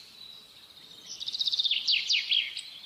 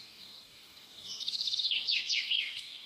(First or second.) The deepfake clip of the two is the second